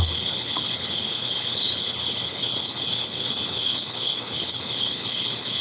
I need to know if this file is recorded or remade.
remade